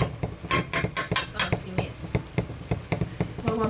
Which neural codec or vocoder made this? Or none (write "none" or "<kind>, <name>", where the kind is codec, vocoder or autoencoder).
none